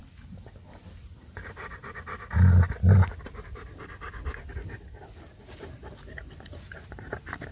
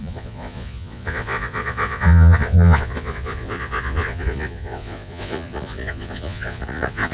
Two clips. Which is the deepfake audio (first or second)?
second